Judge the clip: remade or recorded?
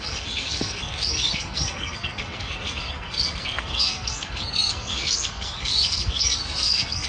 remade